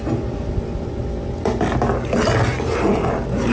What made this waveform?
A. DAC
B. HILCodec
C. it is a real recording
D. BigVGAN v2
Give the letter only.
C